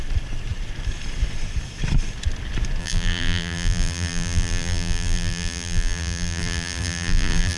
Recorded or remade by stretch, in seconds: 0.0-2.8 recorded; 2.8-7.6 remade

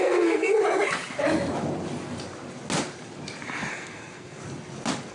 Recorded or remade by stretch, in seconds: 0.0-0.6 remade; 0.6-3.7 recorded; 3.7-4.4 remade; 4.4-5.1 recorded

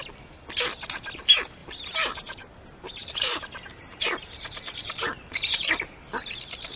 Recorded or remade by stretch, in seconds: 0.0-1.6 recorded; 1.6-5.7 remade; 5.7-6.8 recorded

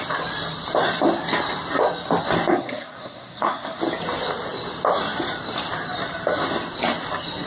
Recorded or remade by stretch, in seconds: 0.0-2.5 recorded; 2.5-3.8 remade; 3.8-7.5 recorded